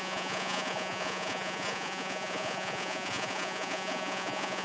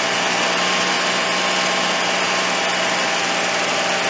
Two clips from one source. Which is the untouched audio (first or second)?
second